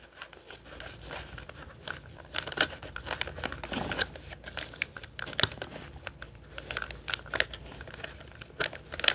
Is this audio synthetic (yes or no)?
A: no